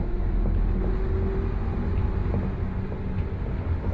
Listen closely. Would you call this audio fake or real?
real